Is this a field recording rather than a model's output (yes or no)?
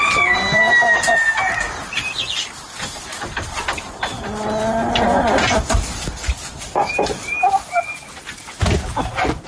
yes